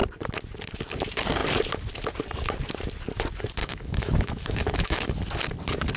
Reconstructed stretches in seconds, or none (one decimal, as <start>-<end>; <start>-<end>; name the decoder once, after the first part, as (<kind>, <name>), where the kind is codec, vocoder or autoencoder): 3.6-5.0 (autoencoder, DAC-VAE)

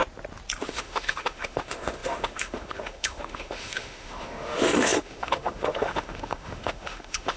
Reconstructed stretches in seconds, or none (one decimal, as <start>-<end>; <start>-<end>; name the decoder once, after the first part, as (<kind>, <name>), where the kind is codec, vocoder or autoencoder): 0.6-7.4 (autoencoder, DAC-VAE)